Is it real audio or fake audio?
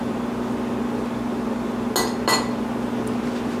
real